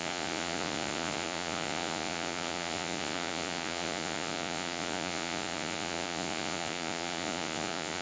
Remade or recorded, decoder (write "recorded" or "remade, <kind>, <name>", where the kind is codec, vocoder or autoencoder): remade, vocoder, Vocos